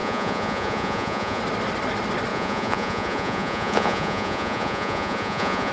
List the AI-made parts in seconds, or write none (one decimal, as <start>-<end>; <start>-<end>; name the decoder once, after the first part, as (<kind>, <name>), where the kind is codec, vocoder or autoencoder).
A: 0.0-1.4 (vocoder, Vocos); 2.3-5.7